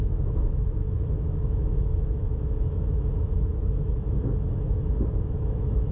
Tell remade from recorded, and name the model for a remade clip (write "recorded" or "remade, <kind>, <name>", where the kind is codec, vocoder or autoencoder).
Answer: remade, autoencoder, DAC-VAE